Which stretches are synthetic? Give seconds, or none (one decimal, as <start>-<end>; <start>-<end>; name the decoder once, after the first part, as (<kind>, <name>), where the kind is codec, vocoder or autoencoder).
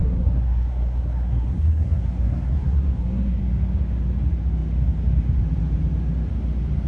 0.0-3.4 (codec, SNAC)